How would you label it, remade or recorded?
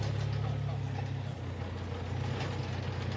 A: recorded